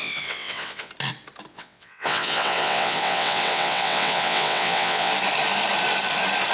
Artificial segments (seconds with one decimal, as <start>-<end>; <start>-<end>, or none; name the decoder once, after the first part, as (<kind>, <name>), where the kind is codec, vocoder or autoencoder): 0.0-0.9 (vocoder, WaveNeXt); 1.5-5.1

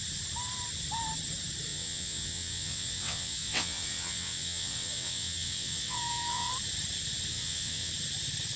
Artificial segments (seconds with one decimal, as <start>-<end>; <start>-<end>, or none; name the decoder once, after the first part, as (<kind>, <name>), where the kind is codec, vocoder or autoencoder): 1.7-6.5 (vocoder, WaveNeXt); 7.3-7.9